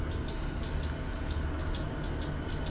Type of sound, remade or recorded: recorded